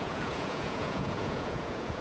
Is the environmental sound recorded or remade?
remade